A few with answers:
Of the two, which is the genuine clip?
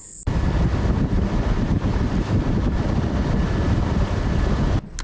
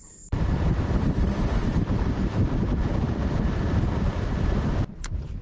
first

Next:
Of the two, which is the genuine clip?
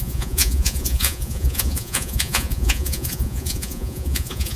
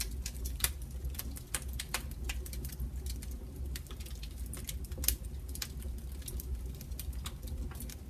second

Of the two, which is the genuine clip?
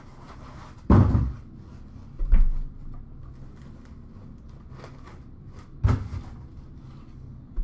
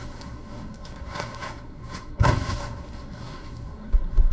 first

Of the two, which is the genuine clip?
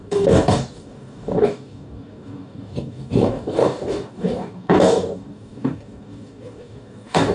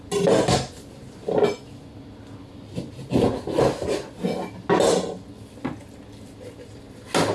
second